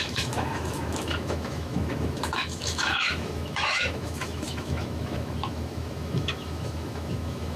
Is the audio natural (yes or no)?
no